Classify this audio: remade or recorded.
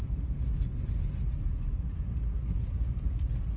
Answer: recorded